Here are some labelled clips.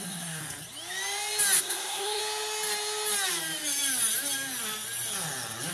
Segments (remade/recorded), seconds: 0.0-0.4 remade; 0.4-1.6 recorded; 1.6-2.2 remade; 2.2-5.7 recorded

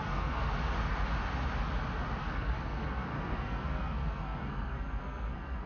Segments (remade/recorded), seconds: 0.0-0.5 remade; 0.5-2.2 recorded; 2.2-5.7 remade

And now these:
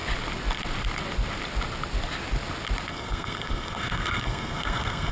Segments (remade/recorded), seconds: 0.0-2.9 recorded; 2.9-5.1 remade